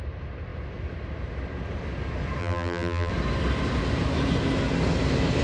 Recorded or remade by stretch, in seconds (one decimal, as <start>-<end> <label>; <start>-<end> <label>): 0.0-2.4 recorded; 2.4-3.1 remade; 3.1-5.4 recorded